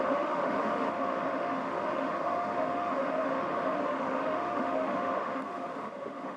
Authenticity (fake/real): fake